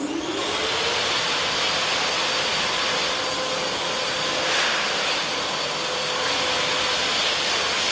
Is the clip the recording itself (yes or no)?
yes